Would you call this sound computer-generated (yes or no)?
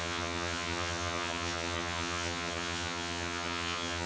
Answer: yes